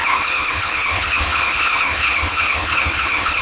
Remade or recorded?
remade